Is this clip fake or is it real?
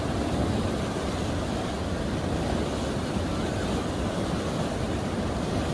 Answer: real